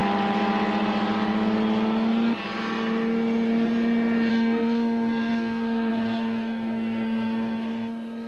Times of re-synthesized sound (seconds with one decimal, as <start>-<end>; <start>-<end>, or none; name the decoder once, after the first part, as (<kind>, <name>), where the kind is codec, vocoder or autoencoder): 4.3-8.3 (codec, SNAC)